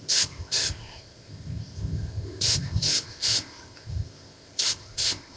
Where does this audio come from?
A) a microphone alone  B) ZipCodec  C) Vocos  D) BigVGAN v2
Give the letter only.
B